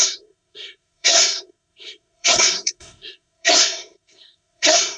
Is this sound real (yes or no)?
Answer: no